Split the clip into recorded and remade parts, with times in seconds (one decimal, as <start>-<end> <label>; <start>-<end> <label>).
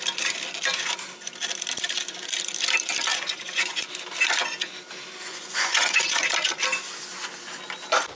0.0-3.1 recorded; 3.1-3.9 remade; 3.9-5.3 recorded; 5.3-6.3 remade; 6.3-8.2 recorded